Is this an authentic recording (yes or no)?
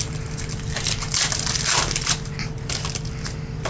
yes